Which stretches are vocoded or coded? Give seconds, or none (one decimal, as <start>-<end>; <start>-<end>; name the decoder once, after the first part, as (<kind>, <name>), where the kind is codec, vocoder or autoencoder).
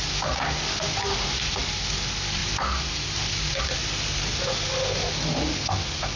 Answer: none